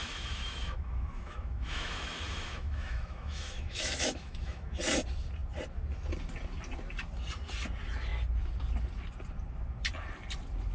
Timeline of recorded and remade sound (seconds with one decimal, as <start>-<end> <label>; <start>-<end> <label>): 0.0-4.8 remade; 4.8-10.7 recorded